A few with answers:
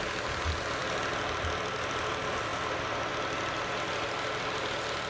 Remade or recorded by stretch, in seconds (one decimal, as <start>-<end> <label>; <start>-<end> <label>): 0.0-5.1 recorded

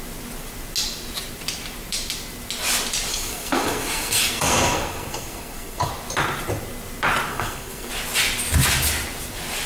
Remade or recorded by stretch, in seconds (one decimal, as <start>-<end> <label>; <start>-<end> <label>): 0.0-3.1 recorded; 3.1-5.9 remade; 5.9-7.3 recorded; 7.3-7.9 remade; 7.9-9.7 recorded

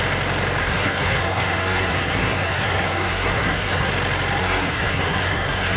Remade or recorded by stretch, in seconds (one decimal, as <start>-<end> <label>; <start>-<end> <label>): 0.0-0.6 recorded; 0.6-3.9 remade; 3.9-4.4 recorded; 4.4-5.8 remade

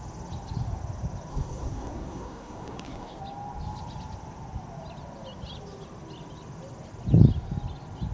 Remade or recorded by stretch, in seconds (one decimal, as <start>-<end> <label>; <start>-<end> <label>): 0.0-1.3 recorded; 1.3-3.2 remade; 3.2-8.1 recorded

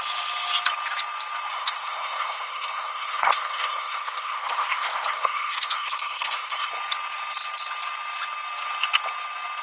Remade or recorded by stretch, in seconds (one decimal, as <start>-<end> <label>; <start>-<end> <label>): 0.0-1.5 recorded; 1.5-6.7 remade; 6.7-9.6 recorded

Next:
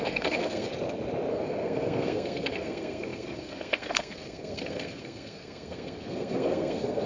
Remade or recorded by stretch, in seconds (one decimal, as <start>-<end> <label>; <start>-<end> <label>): 0.0-0.7 remade; 0.7-1.3 recorded; 1.3-7.1 remade

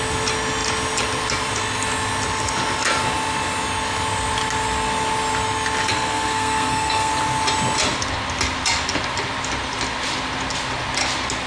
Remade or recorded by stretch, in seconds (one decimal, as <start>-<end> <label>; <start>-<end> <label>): 0.0-5.9 recorded; 5.9-7.1 remade; 7.1-11.5 recorded